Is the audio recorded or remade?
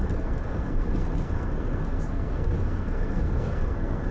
remade